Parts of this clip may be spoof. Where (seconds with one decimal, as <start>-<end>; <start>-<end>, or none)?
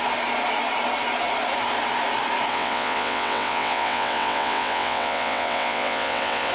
2.5-6.5